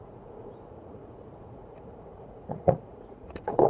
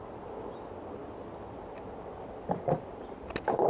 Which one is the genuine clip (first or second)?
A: second